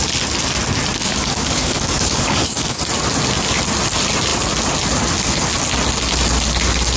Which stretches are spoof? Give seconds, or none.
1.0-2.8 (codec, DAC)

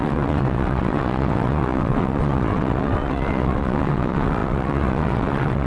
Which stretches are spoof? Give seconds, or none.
0.0-5.7 (vocoder, WaveNeXt)

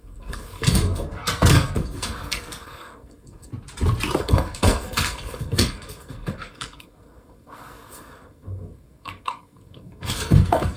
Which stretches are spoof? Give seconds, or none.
0.0-3.5 (codec, SNAC); 4.2-10.8

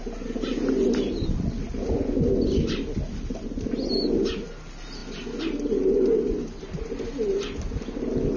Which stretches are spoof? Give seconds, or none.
none

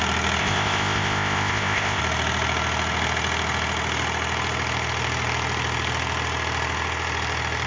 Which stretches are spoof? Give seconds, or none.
0.4-2.0 (codec, ZipCodec)